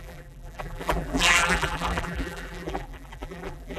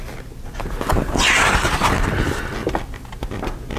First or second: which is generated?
first